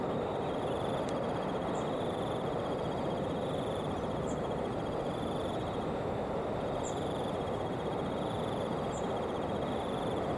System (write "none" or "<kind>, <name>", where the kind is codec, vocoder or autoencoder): vocoder, BigVGAN v2